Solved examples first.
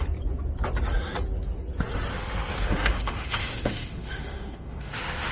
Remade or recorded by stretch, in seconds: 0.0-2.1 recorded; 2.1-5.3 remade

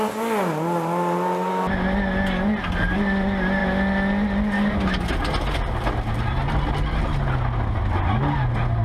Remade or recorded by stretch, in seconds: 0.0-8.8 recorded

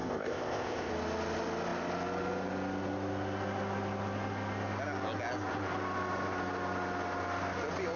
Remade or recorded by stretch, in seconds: 0.0-0.9 remade; 0.9-8.0 recorded

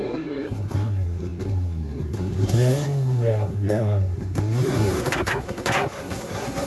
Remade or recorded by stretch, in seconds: 0.0-6.7 remade

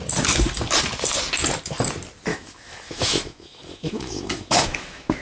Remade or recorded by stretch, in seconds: 0.0-2.3 recorded; 2.3-5.2 remade

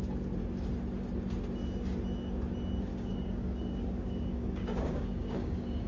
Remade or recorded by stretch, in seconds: 0.0-2.9 recorded; 2.9-5.9 remade

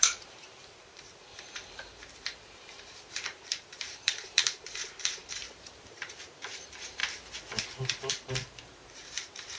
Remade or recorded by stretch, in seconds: 0.0-7.0 remade; 7.0-8.1 recorded; 8.1-9.6 remade

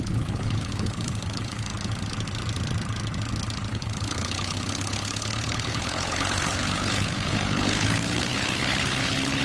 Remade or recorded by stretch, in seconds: 0.0-1.7 remade; 1.7-3.7 recorded; 3.7-9.4 remade